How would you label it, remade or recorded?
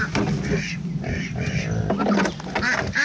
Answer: recorded